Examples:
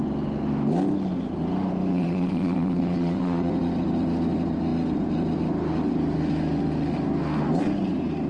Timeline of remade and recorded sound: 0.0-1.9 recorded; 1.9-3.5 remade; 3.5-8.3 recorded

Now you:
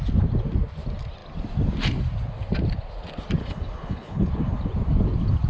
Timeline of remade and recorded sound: 0.0-3.4 recorded; 3.4-4.3 remade; 4.3-5.5 recorded